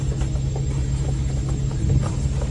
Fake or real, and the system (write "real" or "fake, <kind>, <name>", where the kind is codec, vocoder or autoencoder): real